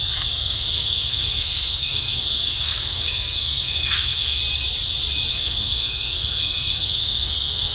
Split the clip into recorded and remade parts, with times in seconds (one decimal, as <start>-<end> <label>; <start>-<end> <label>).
0.0-4.4 remade; 4.4-5.3 recorded; 5.3-7.7 remade